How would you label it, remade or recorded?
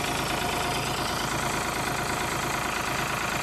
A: recorded